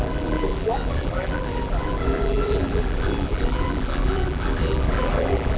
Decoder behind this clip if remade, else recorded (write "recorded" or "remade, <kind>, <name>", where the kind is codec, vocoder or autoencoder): remade, vocoder, BigVGAN v2